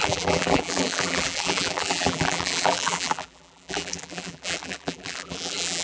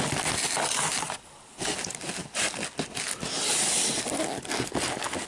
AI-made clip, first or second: first